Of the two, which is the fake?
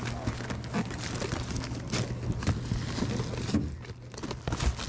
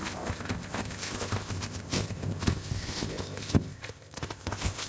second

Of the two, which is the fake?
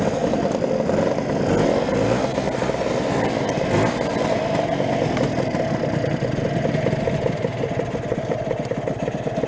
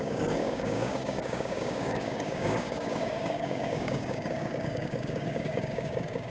second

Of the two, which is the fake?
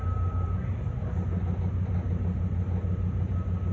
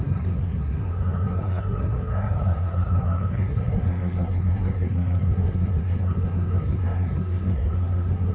second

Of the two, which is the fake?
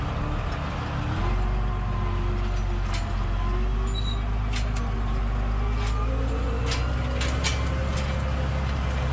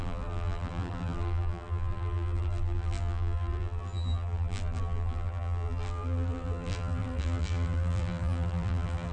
second